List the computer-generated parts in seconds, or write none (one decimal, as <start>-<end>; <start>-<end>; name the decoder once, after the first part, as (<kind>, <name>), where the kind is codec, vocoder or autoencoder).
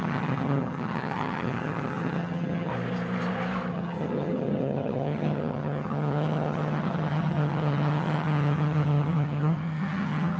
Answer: 0.0-2.7 (vocoder, HiFi-GAN); 3.7-10.4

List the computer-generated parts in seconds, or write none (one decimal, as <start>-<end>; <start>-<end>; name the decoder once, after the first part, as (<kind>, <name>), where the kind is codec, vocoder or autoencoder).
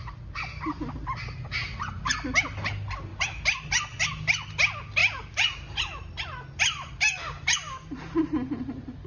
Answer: none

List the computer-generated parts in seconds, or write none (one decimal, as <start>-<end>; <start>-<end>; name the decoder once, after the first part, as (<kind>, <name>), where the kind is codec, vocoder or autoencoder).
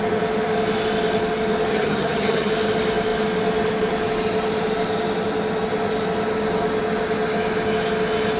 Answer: 1.7-2.5 (vocoder, HiFi-GAN)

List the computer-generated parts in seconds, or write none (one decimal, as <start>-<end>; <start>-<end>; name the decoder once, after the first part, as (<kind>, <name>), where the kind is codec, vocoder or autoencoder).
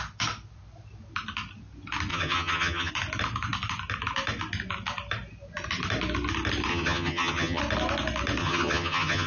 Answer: 2.1-2.9 (vocoder, HiFi-GAN); 6.7-7.6; 8.4-9.3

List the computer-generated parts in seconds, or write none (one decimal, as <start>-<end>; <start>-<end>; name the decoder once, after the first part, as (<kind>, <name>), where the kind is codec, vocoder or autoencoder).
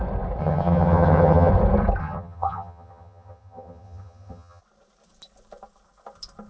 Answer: 0.4-1.5 (vocoder, HiFi-GAN); 2.0-4.6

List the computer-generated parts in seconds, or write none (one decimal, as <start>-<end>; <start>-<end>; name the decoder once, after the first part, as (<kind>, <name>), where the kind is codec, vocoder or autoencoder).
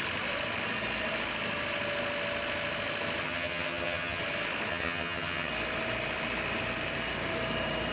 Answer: 3.2-4.2 (vocoder, HiFi-GAN); 4.7-5.5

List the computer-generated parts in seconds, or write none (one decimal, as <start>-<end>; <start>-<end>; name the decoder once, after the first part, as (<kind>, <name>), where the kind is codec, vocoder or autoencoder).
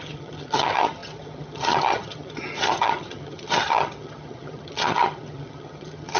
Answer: 0.0-6.2 (vocoder, HiFi-GAN)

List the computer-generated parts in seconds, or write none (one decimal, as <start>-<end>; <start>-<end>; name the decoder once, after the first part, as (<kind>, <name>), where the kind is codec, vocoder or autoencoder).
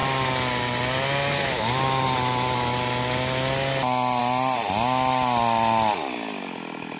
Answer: none